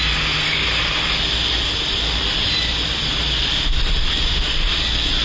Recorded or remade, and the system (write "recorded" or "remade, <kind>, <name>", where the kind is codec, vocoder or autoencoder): recorded